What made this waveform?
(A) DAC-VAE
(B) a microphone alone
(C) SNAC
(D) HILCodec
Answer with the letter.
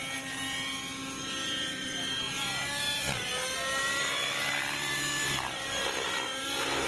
B